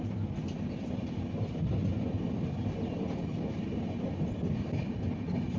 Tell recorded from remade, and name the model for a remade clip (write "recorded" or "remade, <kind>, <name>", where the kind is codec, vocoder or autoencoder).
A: recorded